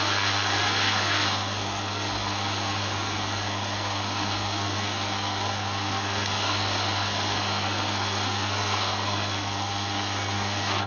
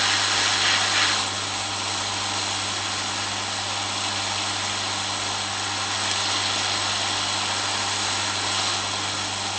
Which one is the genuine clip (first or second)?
second